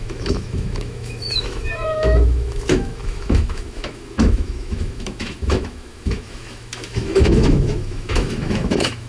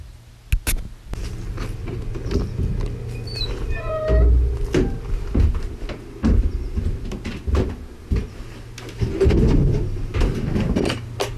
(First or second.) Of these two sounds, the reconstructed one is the first